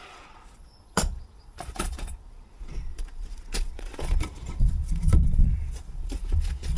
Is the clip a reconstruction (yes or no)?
yes